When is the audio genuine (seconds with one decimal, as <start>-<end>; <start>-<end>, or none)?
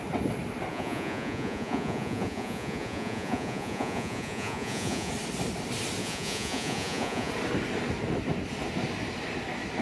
0.0-0.7; 5.1-6.0; 7.3-9.8